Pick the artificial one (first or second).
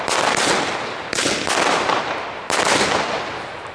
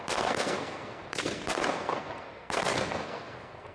second